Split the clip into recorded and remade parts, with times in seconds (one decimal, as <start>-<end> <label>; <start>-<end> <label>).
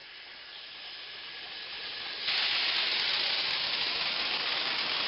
0.0-5.1 recorded